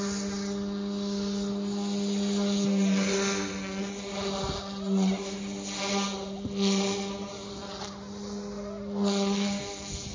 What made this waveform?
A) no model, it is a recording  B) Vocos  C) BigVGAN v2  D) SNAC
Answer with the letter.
A